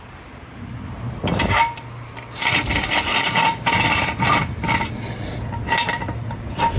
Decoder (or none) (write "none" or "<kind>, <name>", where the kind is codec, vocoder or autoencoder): vocoder, BigVGAN v2